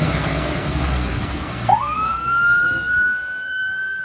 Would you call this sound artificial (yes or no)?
yes